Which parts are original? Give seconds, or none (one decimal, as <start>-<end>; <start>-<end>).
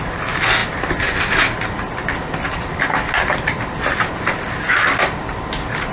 0.0-5.9